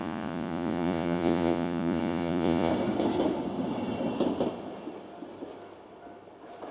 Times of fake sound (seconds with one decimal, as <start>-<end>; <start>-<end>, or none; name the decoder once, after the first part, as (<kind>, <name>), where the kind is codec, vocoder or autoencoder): 0.0-2.7 (vocoder, Vocos)

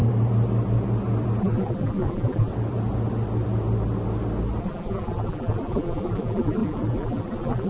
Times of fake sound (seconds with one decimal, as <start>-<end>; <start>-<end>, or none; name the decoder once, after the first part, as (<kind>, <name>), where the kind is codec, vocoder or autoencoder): 1.4-2.5 (vocoder, BigVGAN v2); 4.6-7.7